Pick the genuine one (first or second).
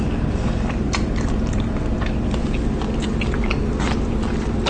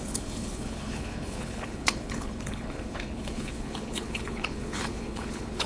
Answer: first